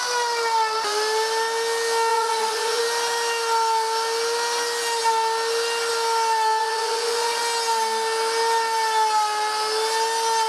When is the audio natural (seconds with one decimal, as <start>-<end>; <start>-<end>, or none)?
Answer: 0.0-2.1; 2.8-6.6; 7.4-10.5